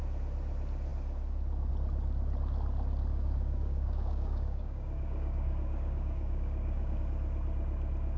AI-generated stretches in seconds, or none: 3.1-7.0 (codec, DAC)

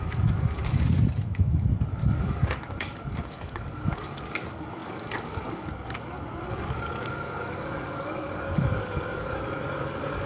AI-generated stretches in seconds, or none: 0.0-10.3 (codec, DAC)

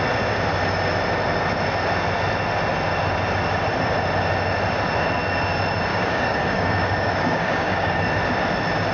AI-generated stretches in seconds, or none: 5.9-8.0 (codec, DAC)